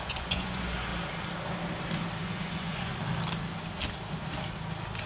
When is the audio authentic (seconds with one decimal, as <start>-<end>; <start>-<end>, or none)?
0.9-2.2; 2.9-5.1